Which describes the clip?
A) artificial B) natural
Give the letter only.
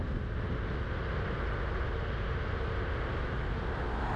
B